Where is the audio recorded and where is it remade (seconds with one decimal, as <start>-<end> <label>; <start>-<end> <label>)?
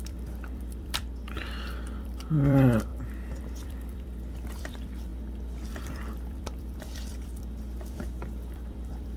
0.0-2.9 remade; 2.9-3.4 recorded; 3.4-5.1 remade; 5.1-5.7 recorded; 5.7-9.2 remade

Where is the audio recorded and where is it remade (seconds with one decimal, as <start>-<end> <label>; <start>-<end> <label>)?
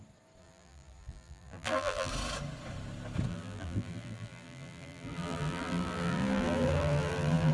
0.0-0.4 recorded; 0.4-2.1 remade; 2.1-3.3 recorded; 3.3-7.5 remade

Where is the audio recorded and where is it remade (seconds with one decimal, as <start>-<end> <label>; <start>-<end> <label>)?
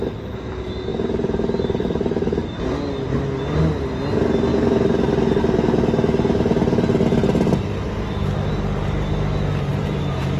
0.0-0.9 recorded; 0.9-2.6 remade; 2.6-4.5 recorded; 4.5-5.4 remade; 5.4-9.7 recorded; 9.7-10.4 remade